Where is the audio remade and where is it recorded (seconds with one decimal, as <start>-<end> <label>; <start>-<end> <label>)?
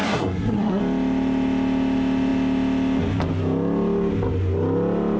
0.0-0.8 remade; 0.8-5.2 recorded